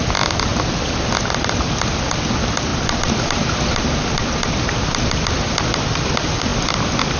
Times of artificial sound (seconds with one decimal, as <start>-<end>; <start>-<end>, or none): none